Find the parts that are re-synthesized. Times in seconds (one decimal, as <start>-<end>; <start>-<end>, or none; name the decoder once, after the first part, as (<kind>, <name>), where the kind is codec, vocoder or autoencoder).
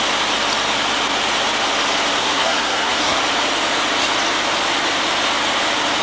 2.2-3.2 (codec, SNAC)